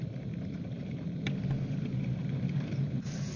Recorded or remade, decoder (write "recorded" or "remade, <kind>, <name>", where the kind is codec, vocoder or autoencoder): remade, vocoder, BigVGAN v2